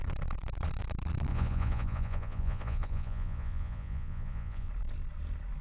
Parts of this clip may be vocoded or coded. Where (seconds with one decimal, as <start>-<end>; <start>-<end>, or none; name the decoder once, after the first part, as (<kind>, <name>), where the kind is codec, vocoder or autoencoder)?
1.3-4.7 (vocoder, Vocos)